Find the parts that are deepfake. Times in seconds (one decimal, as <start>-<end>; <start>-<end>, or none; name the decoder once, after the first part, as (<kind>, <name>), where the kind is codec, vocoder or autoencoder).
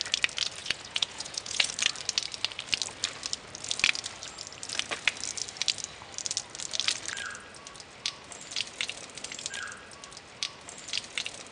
0.6-1.7 (vocoder, Vocos)